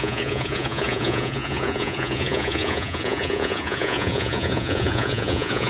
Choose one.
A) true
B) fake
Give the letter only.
B